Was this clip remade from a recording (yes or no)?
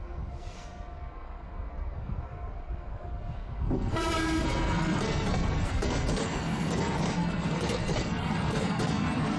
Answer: yes